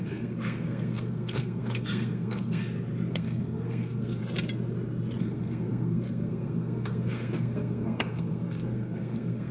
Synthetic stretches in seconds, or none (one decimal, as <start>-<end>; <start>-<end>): 0.0-2.6; 3.1-4.2; 5.2-9.5